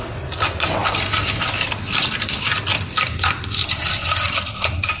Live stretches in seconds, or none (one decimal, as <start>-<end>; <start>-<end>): 0.0-5.0